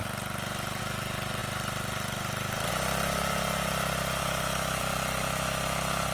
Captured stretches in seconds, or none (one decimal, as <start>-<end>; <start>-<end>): 0.0-4.2; 4.8-6.1